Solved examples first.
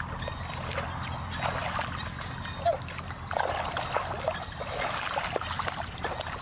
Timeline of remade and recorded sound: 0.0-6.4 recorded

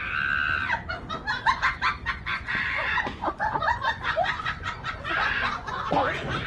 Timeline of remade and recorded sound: 0.0-2.3 recorded; 2.3-6.5 remade